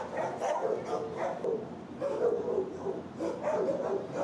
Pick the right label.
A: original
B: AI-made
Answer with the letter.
A